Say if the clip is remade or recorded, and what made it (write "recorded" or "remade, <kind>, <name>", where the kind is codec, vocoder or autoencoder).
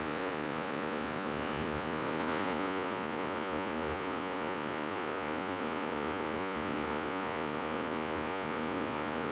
remade, vocoder, Vocos